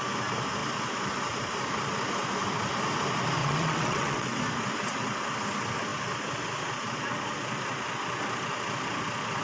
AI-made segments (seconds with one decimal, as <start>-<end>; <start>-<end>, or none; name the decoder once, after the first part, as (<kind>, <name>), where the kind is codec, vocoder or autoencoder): 3.4-4.4 (vocoder, WaveNeXt)